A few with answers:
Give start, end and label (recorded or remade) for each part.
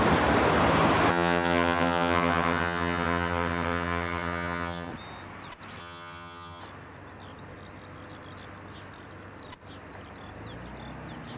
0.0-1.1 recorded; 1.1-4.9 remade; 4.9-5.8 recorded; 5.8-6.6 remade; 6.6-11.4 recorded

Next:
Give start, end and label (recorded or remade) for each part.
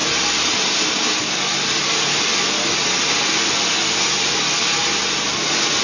0.0-5.8 recorded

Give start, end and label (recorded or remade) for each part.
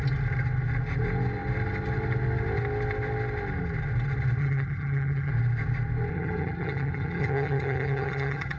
0.0-4.4 recorded; 4.4-5.3 remade; 5.3-6.1 recorded; 6.1-8.6 remade